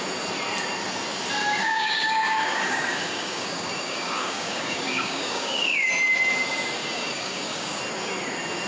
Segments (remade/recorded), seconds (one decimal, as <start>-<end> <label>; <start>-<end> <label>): 0.0-1.4 recorded; 1.4-5.9 remade; 5.9-6.8 recorded; 6.8-7.8 remade; 7.8-8.7 recorded